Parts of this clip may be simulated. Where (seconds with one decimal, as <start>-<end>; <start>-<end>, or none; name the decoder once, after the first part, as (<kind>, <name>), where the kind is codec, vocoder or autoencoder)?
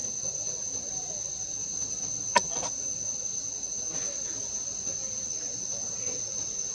none